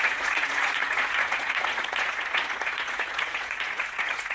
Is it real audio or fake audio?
fake